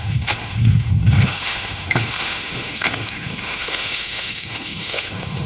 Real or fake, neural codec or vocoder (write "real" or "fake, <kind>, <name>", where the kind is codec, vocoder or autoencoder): fake, autoencoder, DAC-VAE